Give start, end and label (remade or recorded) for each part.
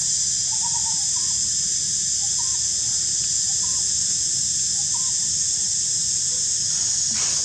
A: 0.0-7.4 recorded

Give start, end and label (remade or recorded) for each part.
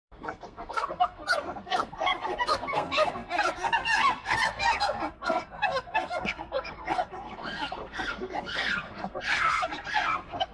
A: 0.0-10.5 remade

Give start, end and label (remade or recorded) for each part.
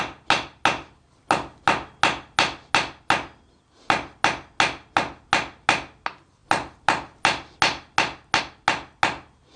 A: 0.0-9.6 recorded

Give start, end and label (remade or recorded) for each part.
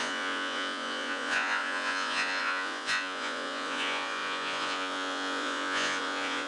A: 0.0-6.5 remade